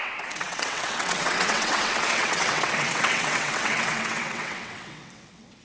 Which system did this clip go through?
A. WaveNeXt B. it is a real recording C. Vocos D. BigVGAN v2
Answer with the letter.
A